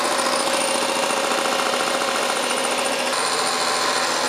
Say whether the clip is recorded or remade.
recorded